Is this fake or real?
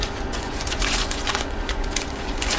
fake